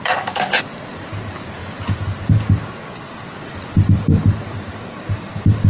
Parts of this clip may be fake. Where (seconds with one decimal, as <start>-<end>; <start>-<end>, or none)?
none